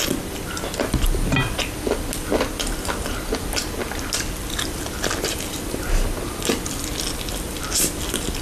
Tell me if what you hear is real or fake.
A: real